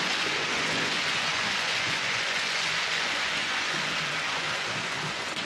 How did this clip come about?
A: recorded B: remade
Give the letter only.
B